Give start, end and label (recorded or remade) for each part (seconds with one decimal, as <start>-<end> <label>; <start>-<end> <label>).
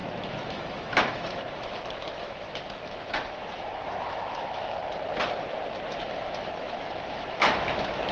0.0-4.8 remade; 4.8-5.9 recorded; 5.9-8.1 remade